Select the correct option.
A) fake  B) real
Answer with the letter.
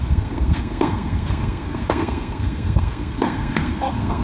A